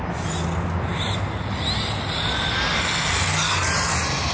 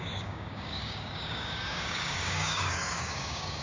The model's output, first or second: second